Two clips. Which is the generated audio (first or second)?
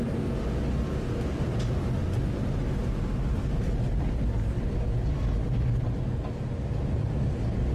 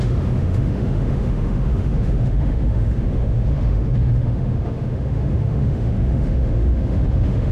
second